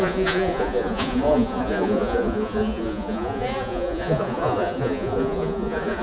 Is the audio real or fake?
fake